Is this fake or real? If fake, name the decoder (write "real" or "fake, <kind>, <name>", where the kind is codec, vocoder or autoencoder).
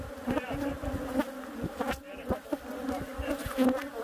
real